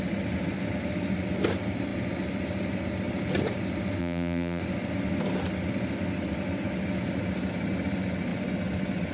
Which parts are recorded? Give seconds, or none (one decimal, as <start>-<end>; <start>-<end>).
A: 0.0-4.0; 4.6-9.1